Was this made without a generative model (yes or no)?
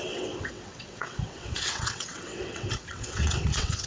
no